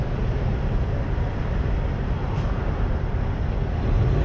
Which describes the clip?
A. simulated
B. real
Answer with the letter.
B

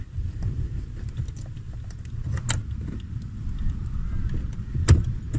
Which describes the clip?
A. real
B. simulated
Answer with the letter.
A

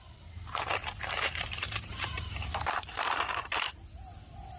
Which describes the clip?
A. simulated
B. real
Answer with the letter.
A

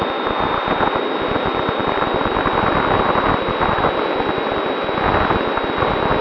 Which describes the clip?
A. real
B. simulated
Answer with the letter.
A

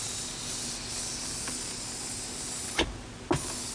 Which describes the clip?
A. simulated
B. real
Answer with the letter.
B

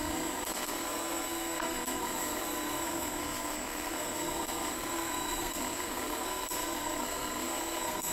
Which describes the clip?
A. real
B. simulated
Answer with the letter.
B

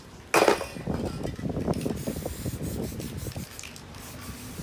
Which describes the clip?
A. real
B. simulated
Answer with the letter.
A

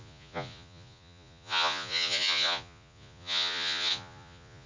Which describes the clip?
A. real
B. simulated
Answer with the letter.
B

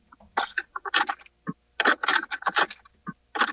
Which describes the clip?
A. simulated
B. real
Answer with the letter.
B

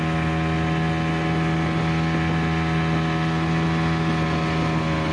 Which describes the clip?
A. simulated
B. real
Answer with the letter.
B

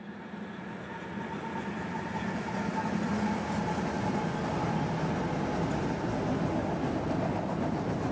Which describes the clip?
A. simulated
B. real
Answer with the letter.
B